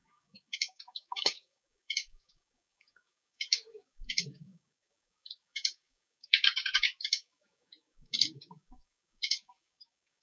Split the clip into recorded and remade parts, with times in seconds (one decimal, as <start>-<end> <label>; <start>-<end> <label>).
0.0-10.2 remade